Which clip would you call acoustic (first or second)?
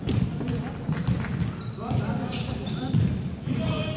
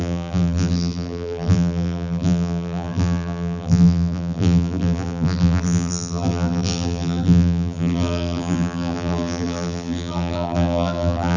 first